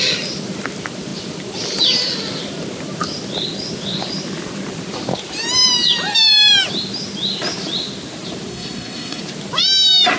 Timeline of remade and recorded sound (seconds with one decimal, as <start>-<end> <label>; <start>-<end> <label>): 0.0-8.5 recorded; 8.5-9.2 remade; 9.2-10.2 recorded